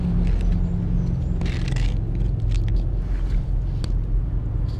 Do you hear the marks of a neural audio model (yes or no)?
no